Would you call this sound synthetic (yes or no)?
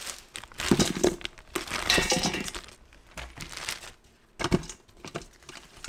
no